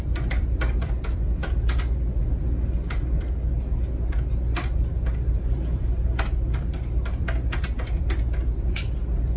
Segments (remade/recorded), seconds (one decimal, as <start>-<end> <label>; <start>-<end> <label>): 0.0-9.4 recorded